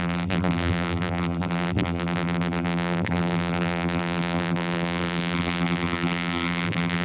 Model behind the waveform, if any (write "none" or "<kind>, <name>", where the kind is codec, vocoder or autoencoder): vocoder, BigVGAN v2